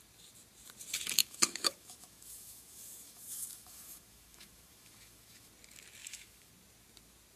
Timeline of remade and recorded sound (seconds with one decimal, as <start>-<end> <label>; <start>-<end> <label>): 0.0-1.2 recorded; 1.2-5.5 remade; 5.5-6.0 recorded; 6.0-6.5 remade; 6.5-7.4 recorded